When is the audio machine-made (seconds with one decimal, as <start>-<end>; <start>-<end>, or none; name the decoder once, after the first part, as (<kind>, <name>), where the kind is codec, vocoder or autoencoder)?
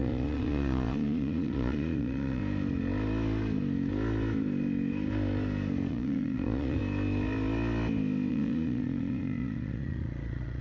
0.0-2.4 (vocoder, Vocos); 5.9-6.8; 8.3-10.6